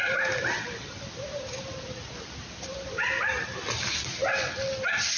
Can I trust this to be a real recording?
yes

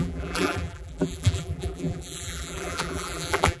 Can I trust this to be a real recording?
no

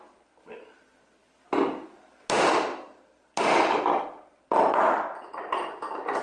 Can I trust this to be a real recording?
yes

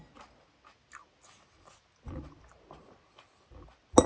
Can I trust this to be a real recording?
yes